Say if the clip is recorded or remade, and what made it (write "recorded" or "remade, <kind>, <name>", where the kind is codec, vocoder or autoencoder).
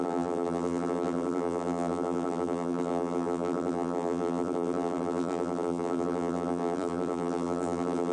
remade, vocoder, BigVGAN v2